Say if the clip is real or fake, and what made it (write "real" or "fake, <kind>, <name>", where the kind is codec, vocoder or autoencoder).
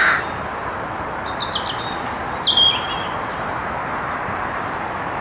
real